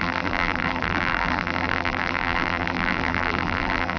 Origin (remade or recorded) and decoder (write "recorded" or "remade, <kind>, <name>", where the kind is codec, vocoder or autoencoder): remade, vocoder, BigVGAN v2